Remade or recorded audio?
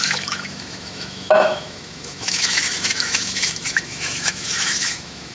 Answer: remade